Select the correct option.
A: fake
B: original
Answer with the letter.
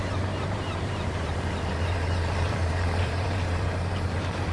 A